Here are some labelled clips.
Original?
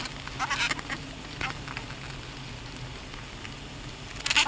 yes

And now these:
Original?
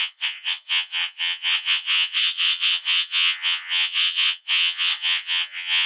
no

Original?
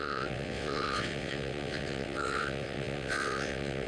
no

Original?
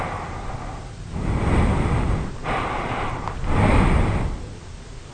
yes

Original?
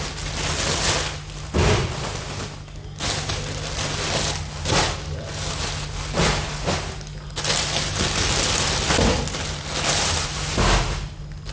yes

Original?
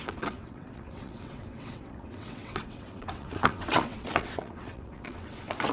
no